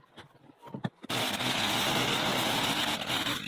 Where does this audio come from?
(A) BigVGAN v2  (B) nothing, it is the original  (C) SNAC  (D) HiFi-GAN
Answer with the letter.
B